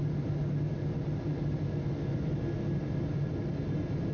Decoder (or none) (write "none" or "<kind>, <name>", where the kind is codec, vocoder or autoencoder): none